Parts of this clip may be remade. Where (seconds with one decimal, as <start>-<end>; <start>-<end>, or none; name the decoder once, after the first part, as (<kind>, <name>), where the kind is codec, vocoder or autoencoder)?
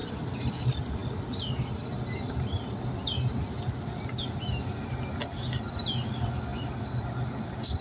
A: none